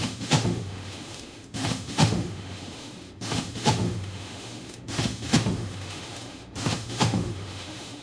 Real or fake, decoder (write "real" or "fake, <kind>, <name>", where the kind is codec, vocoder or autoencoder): fake, autoencoder, DAC-VAE